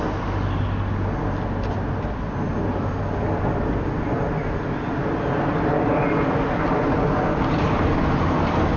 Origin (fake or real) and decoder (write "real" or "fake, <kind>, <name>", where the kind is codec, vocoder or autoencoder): real